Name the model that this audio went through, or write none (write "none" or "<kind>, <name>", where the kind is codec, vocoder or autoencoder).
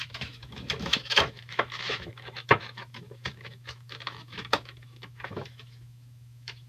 autoencoder, DAC-VAE